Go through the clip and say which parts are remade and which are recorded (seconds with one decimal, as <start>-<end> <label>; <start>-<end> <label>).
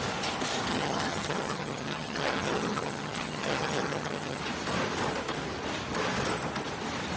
0.0-0.7 recorded; 0.7-4.4 remade; 4.4-7.2 recorded